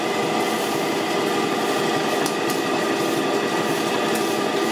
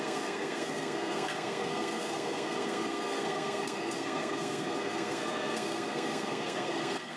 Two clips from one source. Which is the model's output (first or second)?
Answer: second